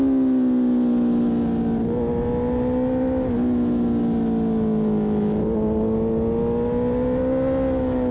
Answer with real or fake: real